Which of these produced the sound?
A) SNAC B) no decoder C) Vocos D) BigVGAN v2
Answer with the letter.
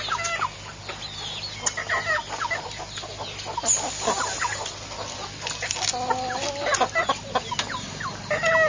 B